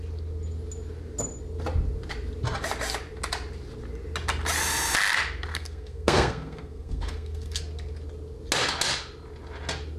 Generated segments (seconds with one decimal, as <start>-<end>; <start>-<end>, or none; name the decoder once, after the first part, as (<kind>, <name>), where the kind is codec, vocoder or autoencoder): 5.5-7.6 (codec, SNAC)